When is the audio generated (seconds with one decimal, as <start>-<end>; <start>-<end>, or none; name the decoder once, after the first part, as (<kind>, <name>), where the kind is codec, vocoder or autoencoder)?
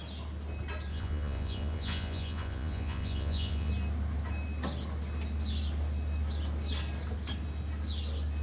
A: 0.9-3.7 (vocoder, Vocos)